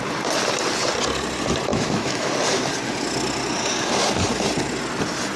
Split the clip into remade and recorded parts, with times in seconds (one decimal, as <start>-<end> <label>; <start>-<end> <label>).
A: 0.0-1.7 recorded; 1.7-2.3 remade; 2.3-5.4 recorded

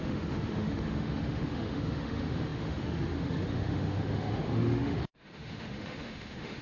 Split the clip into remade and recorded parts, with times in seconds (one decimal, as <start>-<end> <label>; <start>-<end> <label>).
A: 0.0-6.6 remade

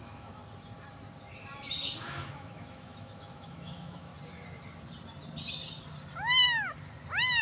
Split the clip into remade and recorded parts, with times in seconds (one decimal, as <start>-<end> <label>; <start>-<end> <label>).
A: 0.0-0.4 remade; 0.4-2.0 recorded; 2.0-4.1 remade; 4.1-7.4 recorded

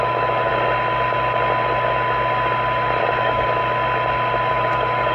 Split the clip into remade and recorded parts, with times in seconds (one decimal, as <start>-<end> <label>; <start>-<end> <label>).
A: 0.0-0.5 remade; 0.5-3.0 recorded; 3.0-3.6 remade; 3.6-4.5 recorded; 4.5-5.1 remade

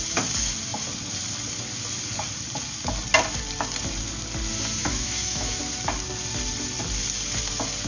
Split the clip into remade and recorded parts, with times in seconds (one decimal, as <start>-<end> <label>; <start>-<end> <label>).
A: 0.0-4.8 recorded; 4.8-5.6 remade; 5.6-7.9 recorded

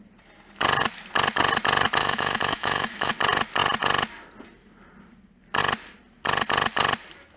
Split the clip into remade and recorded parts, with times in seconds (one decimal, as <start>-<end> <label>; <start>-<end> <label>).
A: 0.0-2.0 recorded; 2.0-3.1 remade; 3.1-7.4 recorded

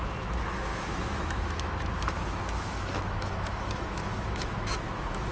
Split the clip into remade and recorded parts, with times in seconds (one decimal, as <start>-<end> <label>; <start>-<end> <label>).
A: 0.0-5.3 remade

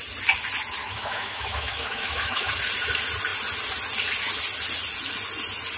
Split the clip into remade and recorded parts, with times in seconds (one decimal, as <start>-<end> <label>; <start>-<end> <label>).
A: 0.0-0.8 recorded; 0.8-2.5 remade; 2.5-5.8 recorded